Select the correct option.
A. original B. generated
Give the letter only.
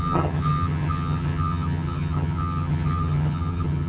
B